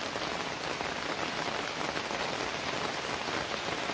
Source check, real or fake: real